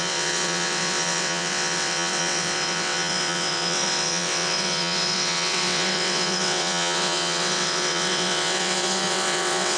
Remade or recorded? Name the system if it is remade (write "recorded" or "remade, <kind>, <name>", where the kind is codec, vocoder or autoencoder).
remade, vocoder, WaveNeXt